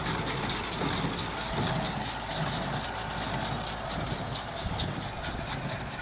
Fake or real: real